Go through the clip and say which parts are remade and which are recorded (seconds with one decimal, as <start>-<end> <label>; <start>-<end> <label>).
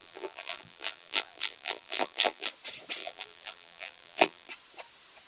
0.0-2.5 remade; 2.5-3.0 recorded; 3.0-4.5 remade; 4.5-5.3 recorded